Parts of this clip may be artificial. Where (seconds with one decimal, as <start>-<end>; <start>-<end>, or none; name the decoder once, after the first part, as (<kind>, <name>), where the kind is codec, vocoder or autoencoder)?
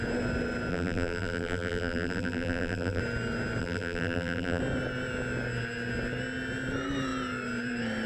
0.7-3.0 (vocoder, BigVGAN v2); 3.6-4.6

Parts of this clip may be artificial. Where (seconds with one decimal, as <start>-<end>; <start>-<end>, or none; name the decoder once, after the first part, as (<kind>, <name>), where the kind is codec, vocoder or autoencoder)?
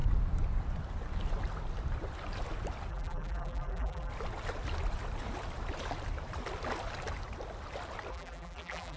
2.9-4.1 (vocoder, BigVGAN v2); 8.1-9.0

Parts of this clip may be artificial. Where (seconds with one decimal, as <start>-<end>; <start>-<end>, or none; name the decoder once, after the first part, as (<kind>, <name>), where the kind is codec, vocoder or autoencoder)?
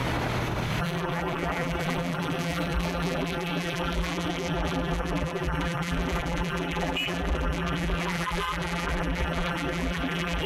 0.8-10.5 (vocoder, BigVGAN v2)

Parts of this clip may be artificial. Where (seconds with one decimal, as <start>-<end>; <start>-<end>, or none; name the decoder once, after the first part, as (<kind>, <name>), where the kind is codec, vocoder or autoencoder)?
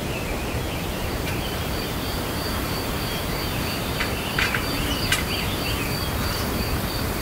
0.6-4.8 (vocoder, BigVGAN v2)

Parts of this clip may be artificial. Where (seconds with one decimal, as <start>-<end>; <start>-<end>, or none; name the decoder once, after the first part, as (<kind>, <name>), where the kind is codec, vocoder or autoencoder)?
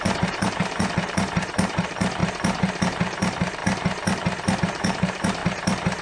0.0-2.2 (vocoder, BigVGAN v2); 2.8-3.6; 4.6-5.4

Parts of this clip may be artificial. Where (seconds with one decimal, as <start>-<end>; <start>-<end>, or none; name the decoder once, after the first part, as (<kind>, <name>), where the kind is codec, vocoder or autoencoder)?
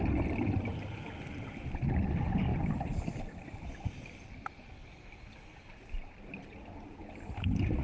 none